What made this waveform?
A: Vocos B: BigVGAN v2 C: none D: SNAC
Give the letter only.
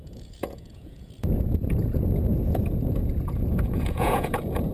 A